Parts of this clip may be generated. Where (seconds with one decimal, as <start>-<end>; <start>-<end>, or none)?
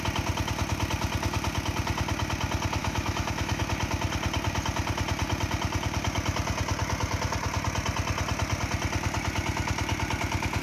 2.8-3.6